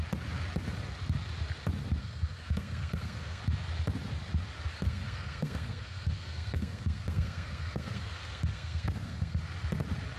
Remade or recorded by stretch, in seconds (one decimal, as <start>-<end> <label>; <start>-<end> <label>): 0.0-2.0 recorded; 2.0-3.4 remade; 3.4-4.7 recorded; 4.7-9.4 remade; 9.4-10.2 recorded